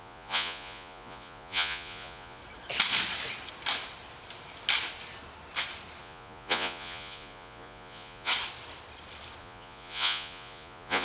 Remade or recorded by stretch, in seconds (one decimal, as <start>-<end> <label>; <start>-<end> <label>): 0.0-2.4 remade; 2.4-6.0 recorded; 6.0-8.3 remade; 8.3-9.4 recorded; 9.4-11.0 remade